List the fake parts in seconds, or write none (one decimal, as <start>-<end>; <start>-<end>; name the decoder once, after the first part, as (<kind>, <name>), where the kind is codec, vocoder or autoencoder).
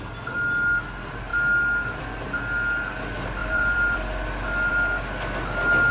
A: 3.4-4.7 (vocoder, BigVGAN v2)